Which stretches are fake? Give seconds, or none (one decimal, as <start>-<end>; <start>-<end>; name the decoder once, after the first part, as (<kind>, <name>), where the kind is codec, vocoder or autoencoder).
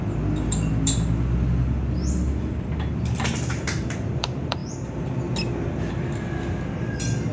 0.0-4.6 (vocoder, BigVGAN v2); 5.9-7.3